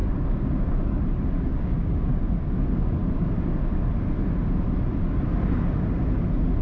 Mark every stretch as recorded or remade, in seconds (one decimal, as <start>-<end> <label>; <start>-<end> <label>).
0.0-0.7 remade; 0.7-1.5 recorded; 1.5-2.1 remade; 2.1-6.6 recorded